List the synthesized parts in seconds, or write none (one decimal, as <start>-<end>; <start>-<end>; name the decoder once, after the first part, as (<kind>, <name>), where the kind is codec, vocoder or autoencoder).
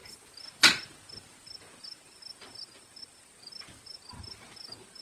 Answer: none